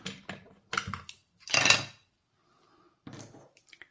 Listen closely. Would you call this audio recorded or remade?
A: recorded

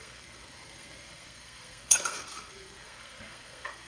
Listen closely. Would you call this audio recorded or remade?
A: remade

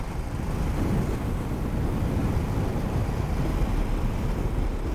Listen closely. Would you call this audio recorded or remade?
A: recorded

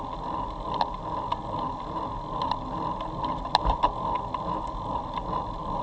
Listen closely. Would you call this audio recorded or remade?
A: recorded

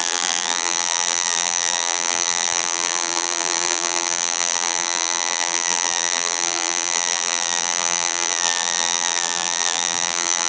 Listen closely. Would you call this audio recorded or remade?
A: remade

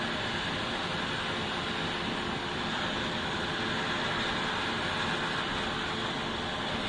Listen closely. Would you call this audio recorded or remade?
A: recorded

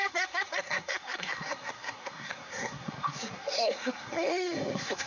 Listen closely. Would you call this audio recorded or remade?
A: remade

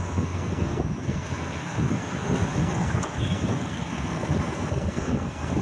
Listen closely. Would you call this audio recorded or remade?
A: remade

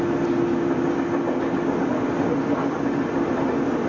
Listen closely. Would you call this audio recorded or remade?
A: recorded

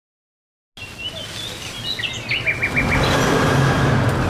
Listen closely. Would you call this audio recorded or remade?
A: recorded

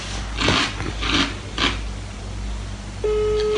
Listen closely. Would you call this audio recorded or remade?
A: recorded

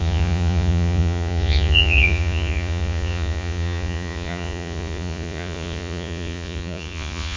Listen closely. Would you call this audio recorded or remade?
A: remade